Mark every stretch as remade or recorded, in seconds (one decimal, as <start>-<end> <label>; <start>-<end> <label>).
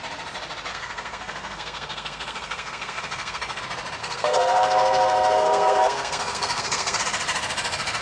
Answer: 0.0-0.7 recorded; 0.7-3.6 remade; 3.6-4.0 recorded; 4.0-7.0 remade; 7.0-8.0 recorded